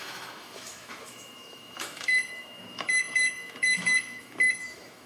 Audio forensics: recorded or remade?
remade